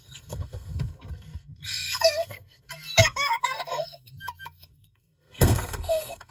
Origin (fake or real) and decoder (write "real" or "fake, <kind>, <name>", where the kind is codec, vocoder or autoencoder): fake, codec, SNAC